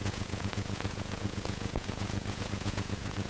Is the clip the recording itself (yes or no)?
no